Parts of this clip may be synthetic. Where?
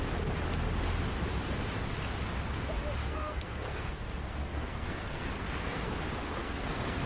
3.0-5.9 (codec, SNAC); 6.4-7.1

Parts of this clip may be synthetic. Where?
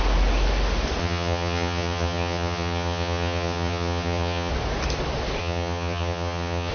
1.0-4.5 (vocoder, HiFi-GAN); 5.4-6.7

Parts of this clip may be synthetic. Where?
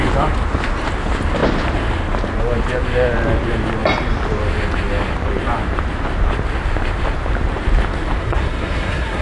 8.2-9.2 (codec, SNAC)